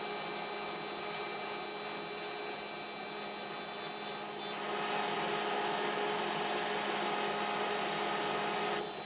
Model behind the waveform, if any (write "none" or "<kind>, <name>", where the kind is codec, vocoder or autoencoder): none